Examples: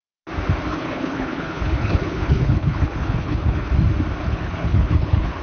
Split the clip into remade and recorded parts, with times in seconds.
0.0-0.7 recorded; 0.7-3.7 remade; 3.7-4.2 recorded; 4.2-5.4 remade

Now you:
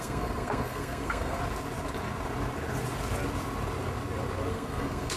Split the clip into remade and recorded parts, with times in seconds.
0.0-1.4 remade; 1.4-4.5 recorded; 4.5-5.2 remade

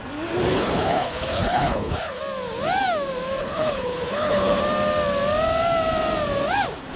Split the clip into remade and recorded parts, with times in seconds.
0.0-0.5 recorded; 0.5-2.2 remade; 2.2-3.4 recorded; 3.4-4.6 remade; 4.6-7.0 recorded